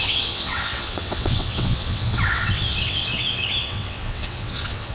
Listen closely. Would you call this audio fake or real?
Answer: fake